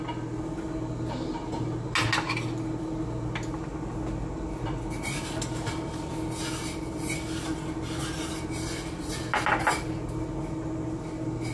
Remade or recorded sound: recorded